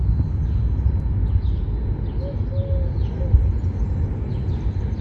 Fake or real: real